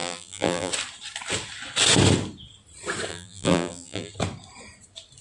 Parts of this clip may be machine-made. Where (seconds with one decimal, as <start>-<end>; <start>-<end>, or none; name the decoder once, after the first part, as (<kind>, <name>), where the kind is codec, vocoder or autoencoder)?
0.0-0.7 (vocoder, BigVGAN v2); 3.1-4.1